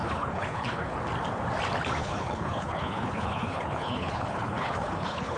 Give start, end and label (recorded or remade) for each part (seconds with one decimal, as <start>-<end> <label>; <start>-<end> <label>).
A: 0.0-1.0 remade; 1.0-2.0 recorded; 2.0-5.4 remade